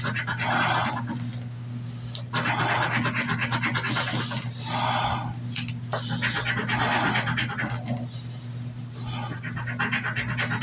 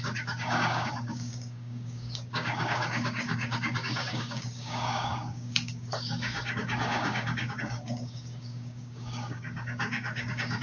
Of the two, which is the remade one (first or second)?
second